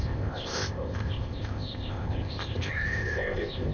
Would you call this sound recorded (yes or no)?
no